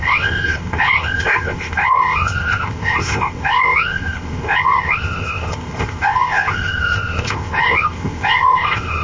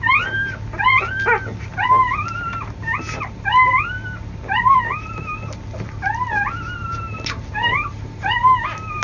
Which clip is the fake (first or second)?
first